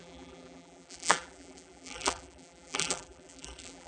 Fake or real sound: fake